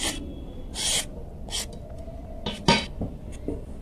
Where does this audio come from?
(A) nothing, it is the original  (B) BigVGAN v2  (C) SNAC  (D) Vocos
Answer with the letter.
A